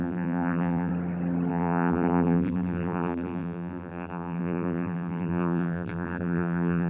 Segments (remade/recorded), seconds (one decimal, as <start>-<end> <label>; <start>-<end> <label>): 0.0-0.9 remade; 0.9-1.5 recorded; 1.5-6.9 remade